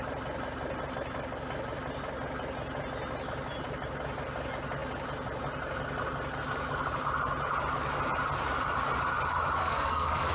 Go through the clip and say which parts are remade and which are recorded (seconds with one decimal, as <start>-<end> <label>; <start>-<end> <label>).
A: 0.0-9.6 recorded; 9.6-10.3 remade